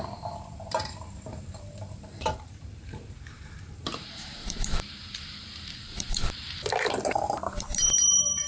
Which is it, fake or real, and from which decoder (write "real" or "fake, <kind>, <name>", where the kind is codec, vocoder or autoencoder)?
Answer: fake, vocoder, BigVGAN v2